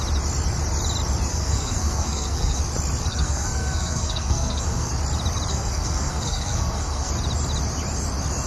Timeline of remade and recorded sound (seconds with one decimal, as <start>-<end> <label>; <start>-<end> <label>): 0.0-1.3 recorded; 1.3-2.6 remade; 2.6-3.1 recorded; 3.1-4.9 remade; 4.9-5.5 recorded; 5.5-7.1 remade; 7.1-8.5 recorded